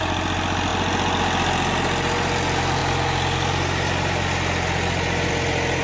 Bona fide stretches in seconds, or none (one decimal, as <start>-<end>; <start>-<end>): 0.0-5.8